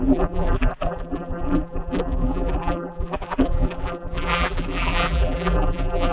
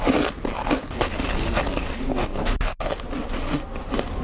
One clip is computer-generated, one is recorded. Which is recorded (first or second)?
second